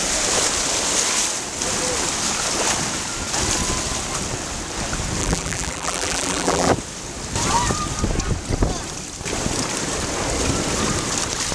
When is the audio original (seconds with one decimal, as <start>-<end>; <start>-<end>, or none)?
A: 0.0-5.2; 6.7-11.5